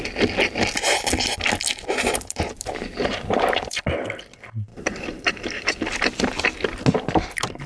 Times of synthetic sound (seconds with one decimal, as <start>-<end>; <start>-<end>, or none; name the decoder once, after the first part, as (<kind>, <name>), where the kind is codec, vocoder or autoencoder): 1.7-3.8 (vocoder, BigVGAN v2); 4.7-5.7